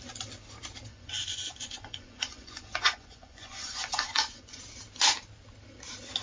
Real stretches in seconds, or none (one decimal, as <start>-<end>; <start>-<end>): 0.0-0.9; 4.6-6.2

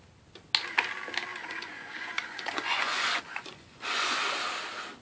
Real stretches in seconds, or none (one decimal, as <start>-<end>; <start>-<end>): 0.0-1.3; 4.3-5.0

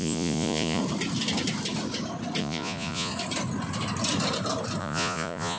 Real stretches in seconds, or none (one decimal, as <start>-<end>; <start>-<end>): 0.8-2.4; 3.1-4.8

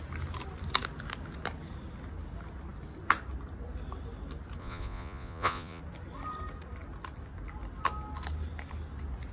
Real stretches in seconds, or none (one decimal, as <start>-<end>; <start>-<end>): 0.0-4.6; 5.8-9.3